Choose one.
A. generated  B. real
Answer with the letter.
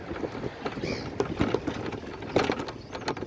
B